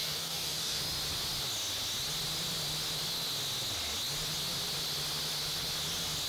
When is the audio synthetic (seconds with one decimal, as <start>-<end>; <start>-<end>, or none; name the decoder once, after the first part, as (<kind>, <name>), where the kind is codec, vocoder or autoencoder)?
0.0-0.8 (codec, DAC)